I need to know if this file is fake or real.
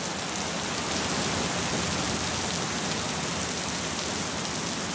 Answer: real